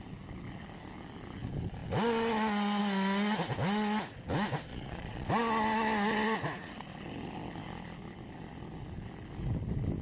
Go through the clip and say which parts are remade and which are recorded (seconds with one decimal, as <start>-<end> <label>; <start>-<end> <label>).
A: 0.0-4.7 recorded; 4.7-5.3 remade; 5.3-10.0 recorded